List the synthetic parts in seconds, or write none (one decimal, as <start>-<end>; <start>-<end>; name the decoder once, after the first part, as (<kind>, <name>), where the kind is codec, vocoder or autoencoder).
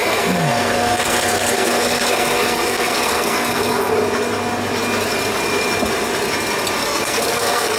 0.0-3.9 (codec, SNAC); 6.8-7.8